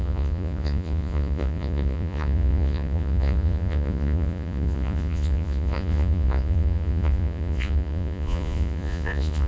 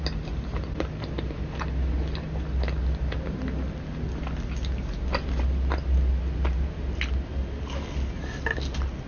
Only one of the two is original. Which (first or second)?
second